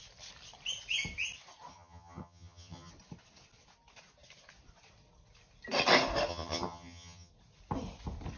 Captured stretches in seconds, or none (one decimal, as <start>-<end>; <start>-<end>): 0.0-1.7; 2.9-6.3; 7.3-8.4